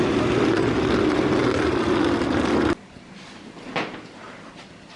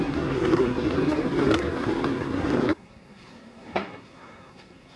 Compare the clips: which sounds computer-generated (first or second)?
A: second